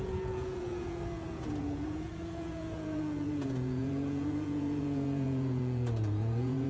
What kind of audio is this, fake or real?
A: fake